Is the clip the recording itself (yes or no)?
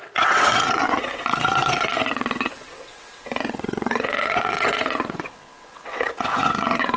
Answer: no